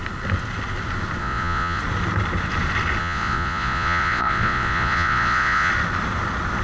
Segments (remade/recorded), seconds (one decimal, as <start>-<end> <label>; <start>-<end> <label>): 0.0-1.2 recorded; 1.2-1.8 remade; 1.8-3.0 recorded; 3.0-5.7 remade; 5.7-6.6 recorded